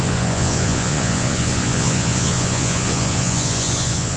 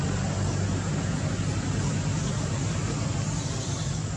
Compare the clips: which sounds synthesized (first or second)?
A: first